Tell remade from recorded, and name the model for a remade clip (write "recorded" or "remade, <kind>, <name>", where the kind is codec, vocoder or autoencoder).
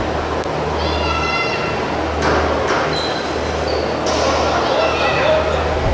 recorded